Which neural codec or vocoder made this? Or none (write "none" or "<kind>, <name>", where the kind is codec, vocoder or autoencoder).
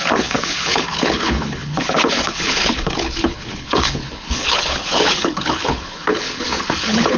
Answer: codec, HILCodec